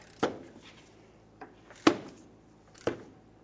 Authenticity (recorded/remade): recorded